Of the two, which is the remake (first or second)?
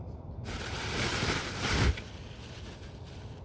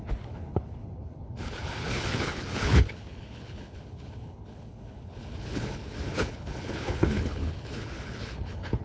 second